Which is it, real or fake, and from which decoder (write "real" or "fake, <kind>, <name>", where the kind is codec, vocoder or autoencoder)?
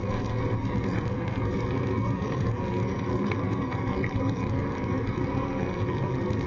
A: fake, codec, SNAC